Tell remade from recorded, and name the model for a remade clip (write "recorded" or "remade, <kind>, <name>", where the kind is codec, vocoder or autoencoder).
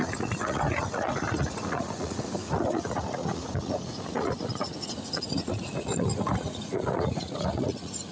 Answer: remade, vocoder, Vocos